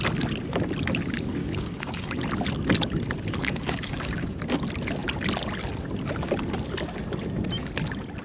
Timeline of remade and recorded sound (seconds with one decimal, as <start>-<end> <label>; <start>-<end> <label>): 0.0-1.4 recorded; 1.4-2.2 remade; 2.2-3.4 recorded; 3.4-4.4 remade; 4.4-8.2 recorded